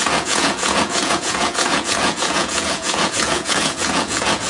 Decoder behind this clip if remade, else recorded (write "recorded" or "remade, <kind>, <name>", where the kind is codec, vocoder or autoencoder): remade, vocoder, Vocos